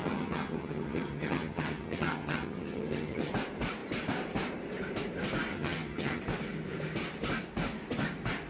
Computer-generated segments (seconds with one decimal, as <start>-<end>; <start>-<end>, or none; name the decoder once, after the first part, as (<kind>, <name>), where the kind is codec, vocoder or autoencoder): 0.0-3.3 (vocoder, HiFi-GAN); 5.5-6.2